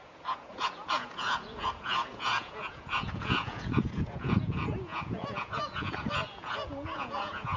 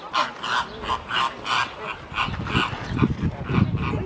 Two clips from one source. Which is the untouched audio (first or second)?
second